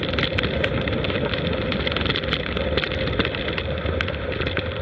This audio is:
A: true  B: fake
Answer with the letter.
A